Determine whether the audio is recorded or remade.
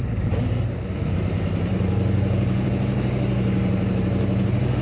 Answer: remade